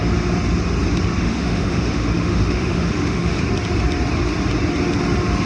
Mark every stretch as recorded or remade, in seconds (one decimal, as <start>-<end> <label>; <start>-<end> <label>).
0.0-1.2 recorded; 1.2-3.4 remade; 3.4-5.5 recorded